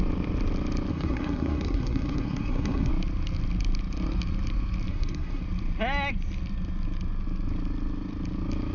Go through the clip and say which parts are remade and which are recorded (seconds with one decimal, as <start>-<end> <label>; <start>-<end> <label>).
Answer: 0.0-0.9 recorded; 0.9-2.9 remade; 2.9-4.9 recorded; 4.9-5.4 remade; 5.4-8.7 recorded